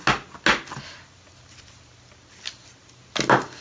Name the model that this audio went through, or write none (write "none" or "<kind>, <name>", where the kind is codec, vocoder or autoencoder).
none